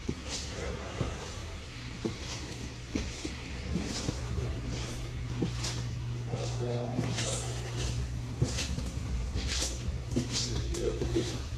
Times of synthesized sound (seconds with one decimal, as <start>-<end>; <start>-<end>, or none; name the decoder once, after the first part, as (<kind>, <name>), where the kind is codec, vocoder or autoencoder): 0.0-11.6 (codec, SNAC)